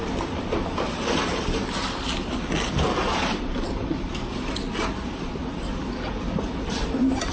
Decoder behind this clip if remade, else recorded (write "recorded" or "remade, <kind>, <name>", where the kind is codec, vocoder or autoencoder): recorded